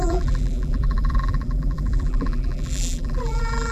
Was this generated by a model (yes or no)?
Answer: yes